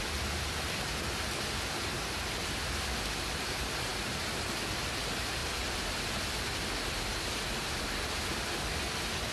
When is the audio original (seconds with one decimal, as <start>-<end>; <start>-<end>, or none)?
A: 0.0-9.3

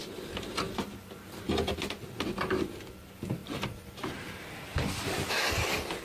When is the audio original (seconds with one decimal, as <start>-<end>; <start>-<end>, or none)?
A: 0.0-6.0